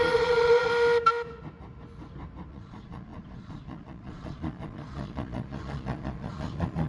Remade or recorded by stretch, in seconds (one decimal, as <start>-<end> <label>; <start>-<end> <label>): 0.0-0.7 remade; 0.7-2.5 recorded; 2.5-6.9 remade